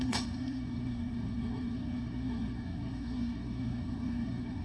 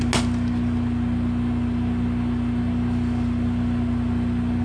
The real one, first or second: second